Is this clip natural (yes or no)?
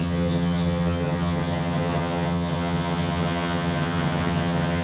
no